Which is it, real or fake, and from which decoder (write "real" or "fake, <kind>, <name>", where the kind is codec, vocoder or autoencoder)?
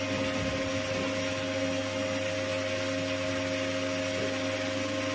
real